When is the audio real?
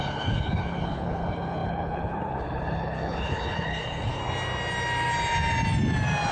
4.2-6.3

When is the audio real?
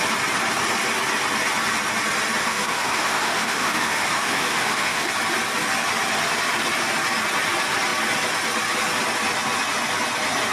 0.0-2.4; 5.1-10.5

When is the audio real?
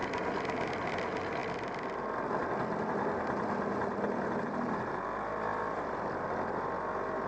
0.0-7.3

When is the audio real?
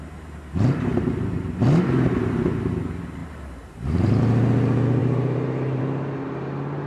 0.0-3.2; 4.2-5.0; 5.8-6.9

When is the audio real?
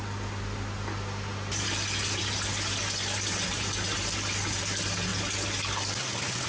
0.0-6.5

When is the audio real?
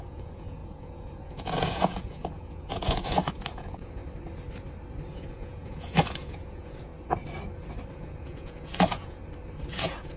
4.0-5.1; 6.9-8.0; 9.2-9.7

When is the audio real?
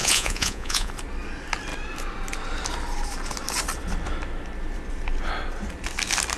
0.9-6.4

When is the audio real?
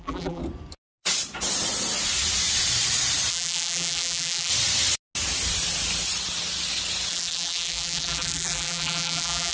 0.4-3.3; 4.5-7.1